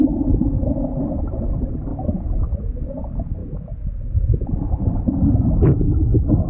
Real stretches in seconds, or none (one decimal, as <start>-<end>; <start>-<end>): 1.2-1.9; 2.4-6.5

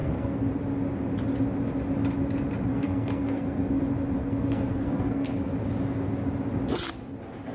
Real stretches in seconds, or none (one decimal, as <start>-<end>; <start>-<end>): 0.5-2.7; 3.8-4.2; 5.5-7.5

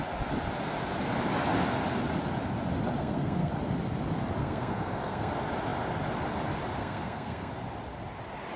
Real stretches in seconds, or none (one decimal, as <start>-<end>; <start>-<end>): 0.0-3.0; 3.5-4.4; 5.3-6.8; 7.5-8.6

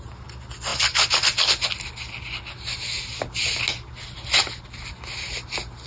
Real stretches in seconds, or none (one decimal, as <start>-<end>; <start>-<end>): 0.0-5.9